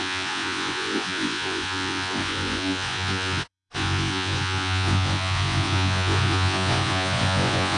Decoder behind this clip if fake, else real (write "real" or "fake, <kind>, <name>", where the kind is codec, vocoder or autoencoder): fake, vocoder, Vocos